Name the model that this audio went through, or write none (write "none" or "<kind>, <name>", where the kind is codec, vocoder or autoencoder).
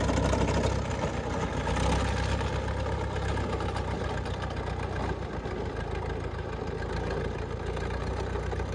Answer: none